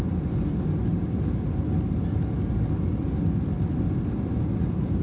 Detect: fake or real real